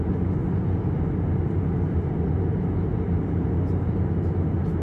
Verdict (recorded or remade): recorded